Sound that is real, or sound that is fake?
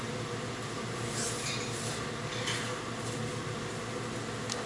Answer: real